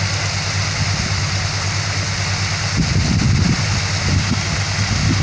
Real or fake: real